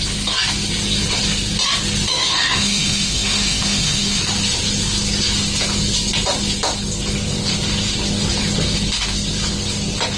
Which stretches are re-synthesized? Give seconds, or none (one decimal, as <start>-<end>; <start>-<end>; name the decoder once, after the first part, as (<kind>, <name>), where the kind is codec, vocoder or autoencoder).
2.1-4.2 (autoencoder, DAC-VAE)